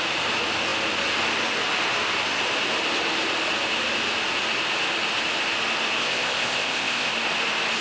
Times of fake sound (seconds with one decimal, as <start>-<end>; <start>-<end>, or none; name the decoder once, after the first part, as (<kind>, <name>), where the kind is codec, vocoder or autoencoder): 6.0-7.1 (codec, ZipCodec)